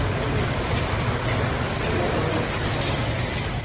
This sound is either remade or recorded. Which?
recorded